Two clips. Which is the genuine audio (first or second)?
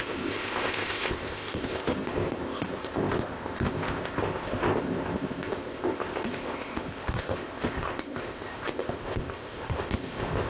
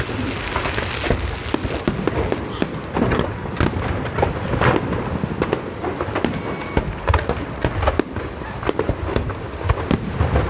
second